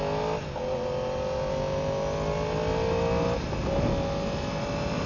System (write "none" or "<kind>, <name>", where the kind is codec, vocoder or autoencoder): none